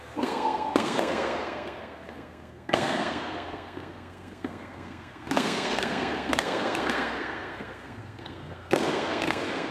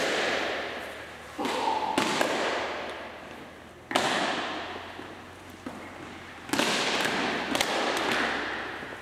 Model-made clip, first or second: first